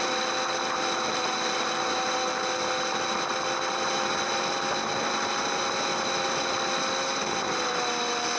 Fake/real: real